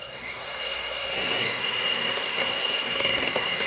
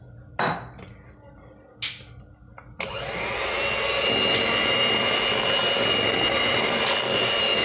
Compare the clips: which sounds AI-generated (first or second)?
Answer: first